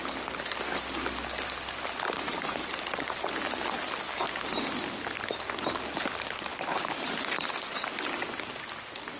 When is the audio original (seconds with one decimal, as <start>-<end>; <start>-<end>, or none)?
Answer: 0.0-6.5; 7.2-9.2